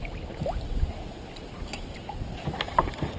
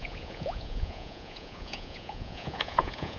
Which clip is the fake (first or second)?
second